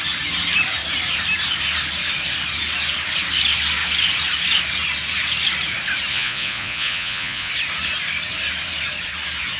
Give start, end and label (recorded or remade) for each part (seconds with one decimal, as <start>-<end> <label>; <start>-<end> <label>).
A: 0.0-6.1 recorded; 6.1-7.5 remade; 7.5-9.6 recorded